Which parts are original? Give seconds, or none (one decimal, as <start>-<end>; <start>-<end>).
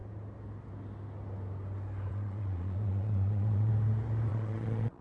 0.0-2.1; 3.7-4.3